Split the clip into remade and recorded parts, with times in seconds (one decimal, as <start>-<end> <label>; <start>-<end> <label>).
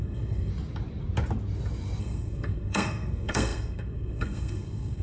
0.0-0.5 remade; 0.5-2.0 recorded; 2.0-5.0 remade